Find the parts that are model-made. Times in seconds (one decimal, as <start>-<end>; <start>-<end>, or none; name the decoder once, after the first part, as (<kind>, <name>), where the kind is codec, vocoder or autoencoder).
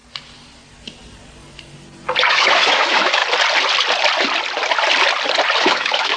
2.3-3.2 (autoencoder, DAC-VAE); 5.6-6.2